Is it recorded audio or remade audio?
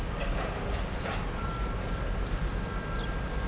recorded